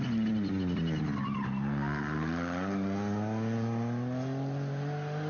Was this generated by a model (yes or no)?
no